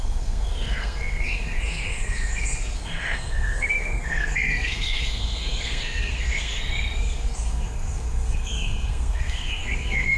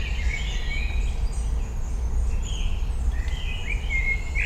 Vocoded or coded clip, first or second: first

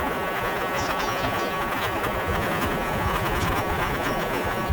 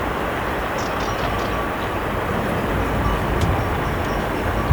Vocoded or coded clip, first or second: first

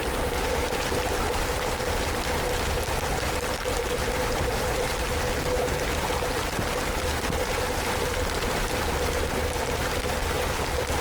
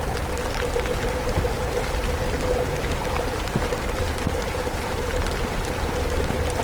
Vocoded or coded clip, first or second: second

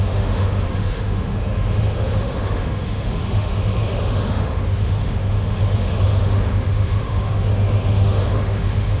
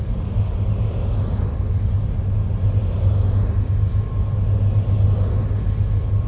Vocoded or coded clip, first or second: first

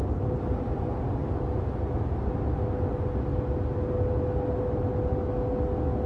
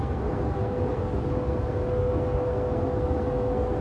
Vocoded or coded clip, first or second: second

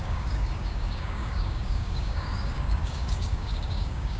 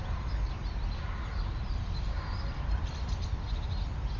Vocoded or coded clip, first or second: first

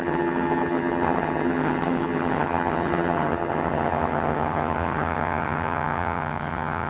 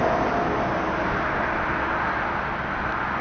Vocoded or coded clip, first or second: first